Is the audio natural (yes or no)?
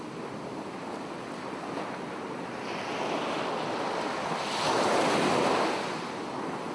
yes